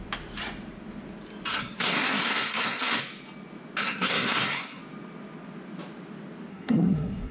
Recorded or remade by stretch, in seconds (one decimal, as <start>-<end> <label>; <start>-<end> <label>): 0.0-1.5 recorded; 1.5-3.0 remade; 3.0-3.8 recorded; 3.8-4.8 remade; 4.8-6.5 recorded; 6.5-7.3 remade